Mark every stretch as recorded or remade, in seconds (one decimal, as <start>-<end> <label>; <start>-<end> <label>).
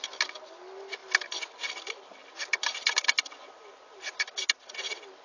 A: 0.0-5.2 recorded